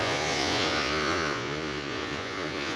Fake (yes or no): yes